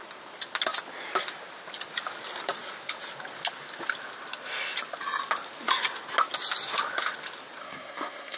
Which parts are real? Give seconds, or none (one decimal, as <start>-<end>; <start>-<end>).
0.0-7.6